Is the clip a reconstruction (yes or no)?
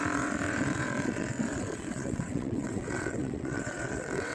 yes